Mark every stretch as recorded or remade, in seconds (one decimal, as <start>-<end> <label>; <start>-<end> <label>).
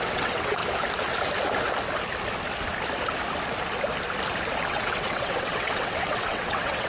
0.0-0.6 remade; 0.6-4.7 recorded; 4.7-6.9 remade